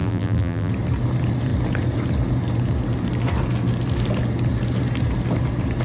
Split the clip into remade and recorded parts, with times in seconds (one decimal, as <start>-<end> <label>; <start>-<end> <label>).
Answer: 0.0-0.7 remade; 0.7-5.8 recorded